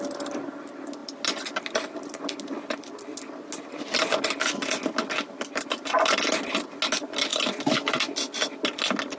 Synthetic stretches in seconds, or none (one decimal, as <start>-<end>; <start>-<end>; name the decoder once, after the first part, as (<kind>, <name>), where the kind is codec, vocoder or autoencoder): none